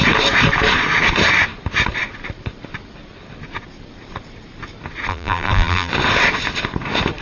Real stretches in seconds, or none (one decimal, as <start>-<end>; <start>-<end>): 0.0-5.1; 5.9-7.2